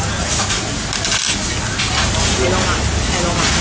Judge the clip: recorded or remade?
recorded